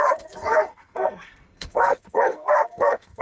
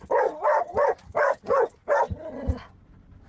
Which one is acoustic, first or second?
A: second